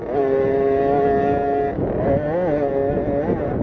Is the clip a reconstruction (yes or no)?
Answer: no